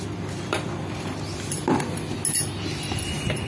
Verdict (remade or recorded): recorded